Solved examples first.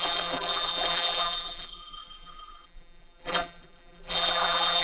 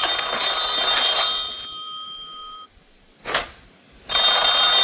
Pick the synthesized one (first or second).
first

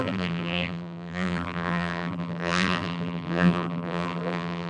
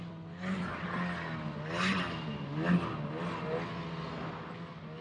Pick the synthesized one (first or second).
first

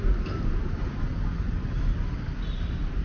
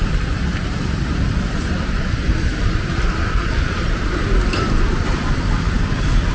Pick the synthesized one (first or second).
second